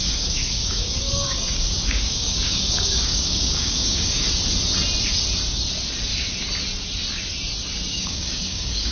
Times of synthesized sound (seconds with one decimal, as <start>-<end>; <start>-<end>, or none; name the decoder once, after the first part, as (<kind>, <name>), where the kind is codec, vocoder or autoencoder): 0.0-4.2 (codec, DAC); 7.9-8.9